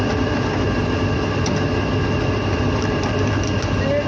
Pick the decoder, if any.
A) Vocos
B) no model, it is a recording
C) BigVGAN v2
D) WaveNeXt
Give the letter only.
B